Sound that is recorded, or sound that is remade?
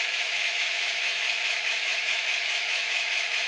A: remade